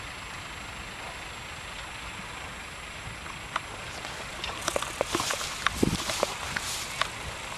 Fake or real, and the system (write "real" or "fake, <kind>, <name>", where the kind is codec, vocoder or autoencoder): real